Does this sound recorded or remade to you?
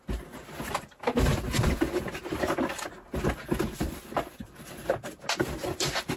recorded